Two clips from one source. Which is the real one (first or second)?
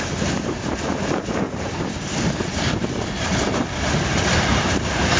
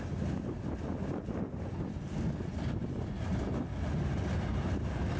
second